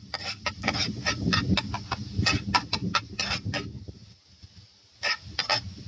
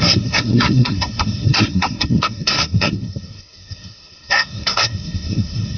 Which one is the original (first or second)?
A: first